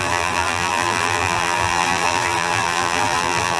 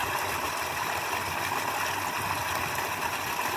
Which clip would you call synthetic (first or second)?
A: first